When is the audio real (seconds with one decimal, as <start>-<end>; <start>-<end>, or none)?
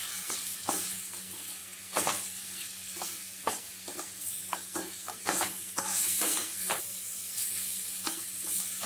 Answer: none